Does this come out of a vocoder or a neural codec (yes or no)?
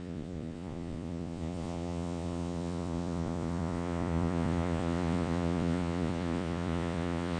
yes